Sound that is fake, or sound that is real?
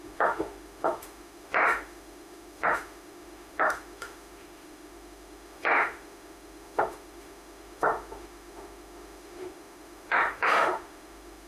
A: fake